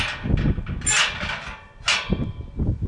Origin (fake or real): real